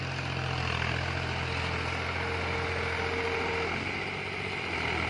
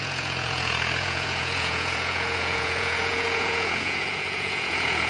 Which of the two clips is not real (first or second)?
second